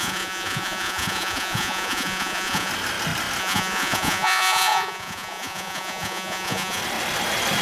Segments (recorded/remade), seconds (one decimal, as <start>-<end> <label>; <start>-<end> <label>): 0.0-2.7 remade; 2.7-3.4 recorded; 3.4-6.8 remade; 6.8-7.6 recorded